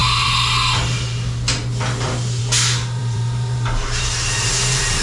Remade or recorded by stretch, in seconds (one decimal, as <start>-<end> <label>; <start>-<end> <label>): 0.0-3.0 recorded; 3.0-4.5 remade; 4.5-5.0 recorded